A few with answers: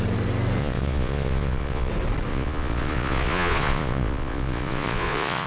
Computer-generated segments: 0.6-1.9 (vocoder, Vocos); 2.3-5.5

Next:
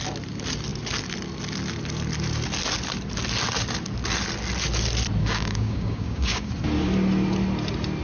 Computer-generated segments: 5.2-6.5 (codec, DAC)

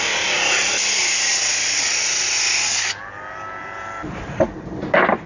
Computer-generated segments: none

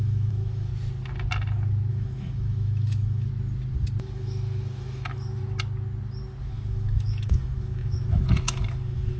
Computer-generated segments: 0.0-0.7 (autoencoder, DAC-VAE); 1.9-3.3; 4.0-5.4; 6.4-9.2

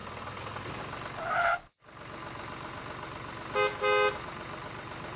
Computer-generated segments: 0.8-1.6 (vocoder, BigVGAN v2); 4.1-5.2

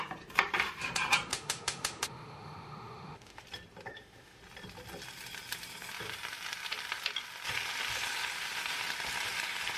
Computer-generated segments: 1.3-3.4 (autoencoder, DAC-VAE); 3.9-4.4